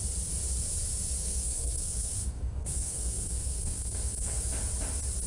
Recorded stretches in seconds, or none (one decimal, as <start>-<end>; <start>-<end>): 0.0-1.2; 4.4-5.3